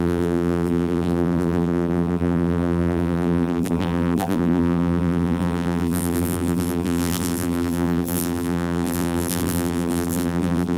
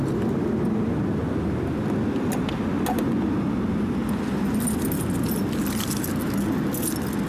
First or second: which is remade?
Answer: first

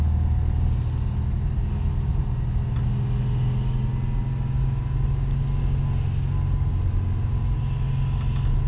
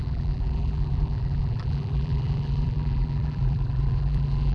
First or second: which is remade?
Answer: second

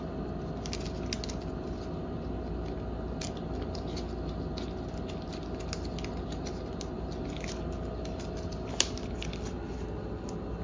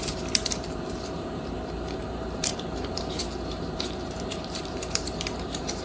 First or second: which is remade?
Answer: second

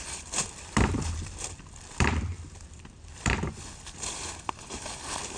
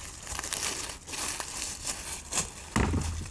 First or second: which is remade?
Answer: first